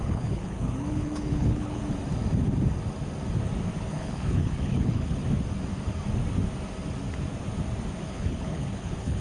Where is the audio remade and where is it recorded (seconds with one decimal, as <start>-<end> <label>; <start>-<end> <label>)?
0.0-1.8 remade; 1.8-3.9 recorded; 3.9-5.2 remade; 5.2-8.1 recorded; 8.1-9.2 remade